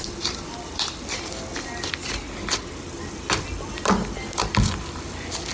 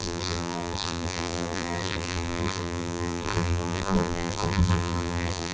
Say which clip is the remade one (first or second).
second